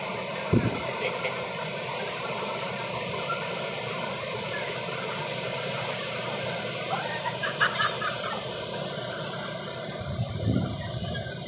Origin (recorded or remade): remade